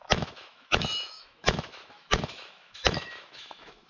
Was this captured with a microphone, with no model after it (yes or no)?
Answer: no